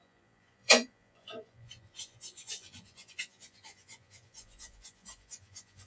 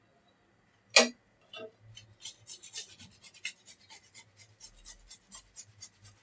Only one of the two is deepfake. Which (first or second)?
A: first